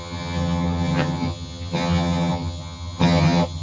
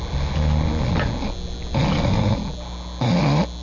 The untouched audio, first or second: second